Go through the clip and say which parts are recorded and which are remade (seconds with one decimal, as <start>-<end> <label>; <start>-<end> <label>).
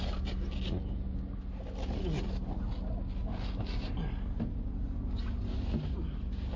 0.0-6.6 recorded